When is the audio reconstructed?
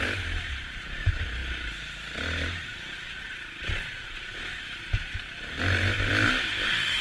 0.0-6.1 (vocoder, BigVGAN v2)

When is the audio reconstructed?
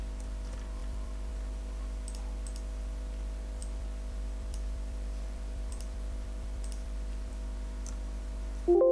0.8-1.3 (vocoder, BigVGAN v2); 3.6-7.3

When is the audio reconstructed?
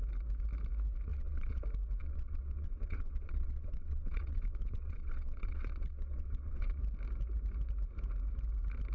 1.1-1.6 (vocoder, WaveNeXt); 2.0-6.8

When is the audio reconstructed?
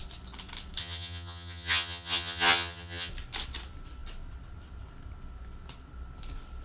0.8-3.1 (vocoder, HiFi-GAN)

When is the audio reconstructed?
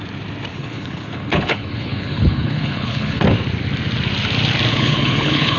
0.5-3.2 (codec, HILCodec); 4.7-5.6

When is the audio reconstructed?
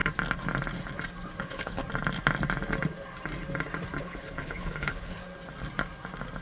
1.4-1.8 (codec, HILCodec); 4.0-5.2